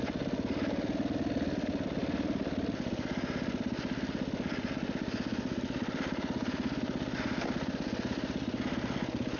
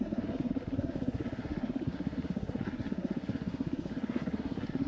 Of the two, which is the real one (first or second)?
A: first